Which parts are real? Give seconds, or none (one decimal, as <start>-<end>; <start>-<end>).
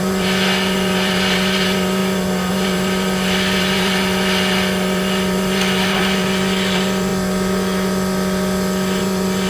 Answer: 7.1-9.0